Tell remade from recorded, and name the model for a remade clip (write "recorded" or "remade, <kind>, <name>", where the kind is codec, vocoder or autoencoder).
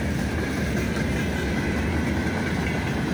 recorded